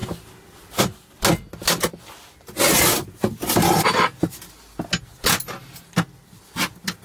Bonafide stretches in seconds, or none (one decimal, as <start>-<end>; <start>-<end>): 0.0-7.0

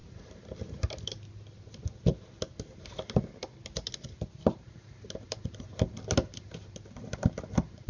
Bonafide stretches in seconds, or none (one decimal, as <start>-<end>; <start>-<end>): 2.1-4.3

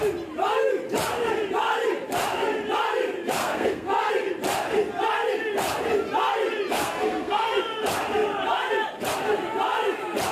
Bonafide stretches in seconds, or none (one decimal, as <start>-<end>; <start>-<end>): 0.0-3.4; 4.1-6.8; 7.6-10.3

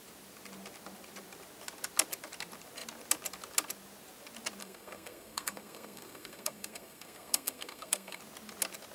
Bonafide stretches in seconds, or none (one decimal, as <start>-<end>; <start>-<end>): 0.0-4.6; 8.2-8.9

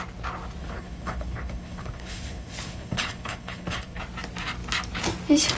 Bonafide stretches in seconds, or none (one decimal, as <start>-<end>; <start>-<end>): 0.0-0.6; 4.0-5.6

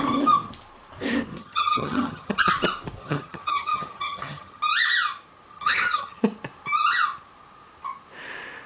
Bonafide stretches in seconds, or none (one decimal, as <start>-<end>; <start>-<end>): 0.0-1.3; 2.5-3.0; 4.6-5.5; 6.2-8.7

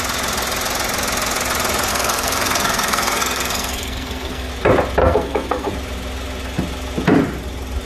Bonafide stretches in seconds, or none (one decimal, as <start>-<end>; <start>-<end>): 0.0-1.9; 4.5-5.0; 5.7-7.8